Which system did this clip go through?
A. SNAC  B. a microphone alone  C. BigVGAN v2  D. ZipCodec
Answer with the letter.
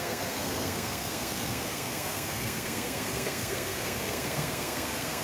A